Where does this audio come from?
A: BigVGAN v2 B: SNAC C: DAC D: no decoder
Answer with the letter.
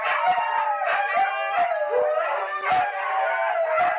D